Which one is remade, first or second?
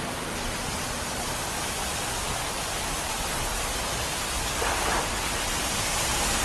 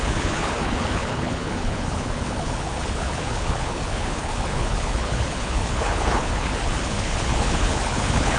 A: second